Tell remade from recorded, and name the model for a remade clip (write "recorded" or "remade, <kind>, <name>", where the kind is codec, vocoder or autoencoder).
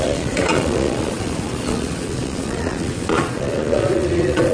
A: remade, vocoder, Vocos